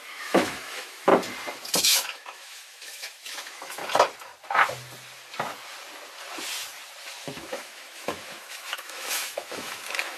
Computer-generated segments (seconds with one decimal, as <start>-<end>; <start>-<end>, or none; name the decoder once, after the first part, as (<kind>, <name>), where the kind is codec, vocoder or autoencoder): 0.0-1.1 (autoencoder, DAC-VAE); 1.8-3.8; 7.1-10.2